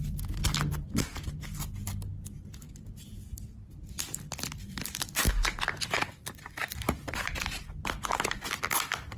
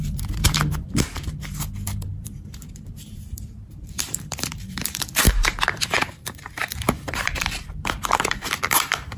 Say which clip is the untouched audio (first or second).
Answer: first